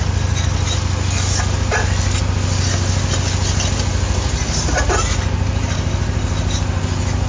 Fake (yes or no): no